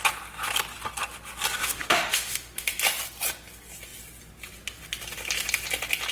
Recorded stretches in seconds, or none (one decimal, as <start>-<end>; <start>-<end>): 0.0-1.6; 2.7-6.1